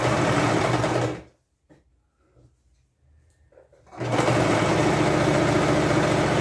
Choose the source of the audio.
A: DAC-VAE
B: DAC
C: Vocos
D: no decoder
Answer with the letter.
D